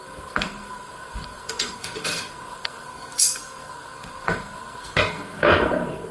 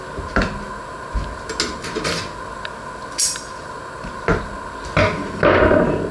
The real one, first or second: second